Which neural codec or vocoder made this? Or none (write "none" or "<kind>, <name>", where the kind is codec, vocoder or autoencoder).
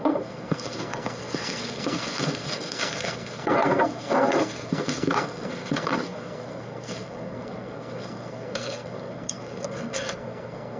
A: codec, SNAC